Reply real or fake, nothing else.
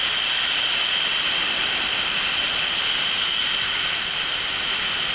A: real